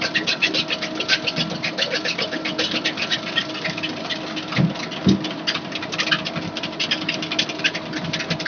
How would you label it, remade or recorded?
recorded